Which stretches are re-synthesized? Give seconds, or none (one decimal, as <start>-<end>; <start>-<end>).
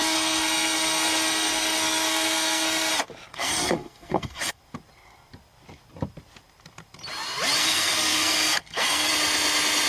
0.0-2.9; 3.3-4.6; 7.6-9.1